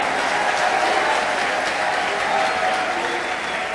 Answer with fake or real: real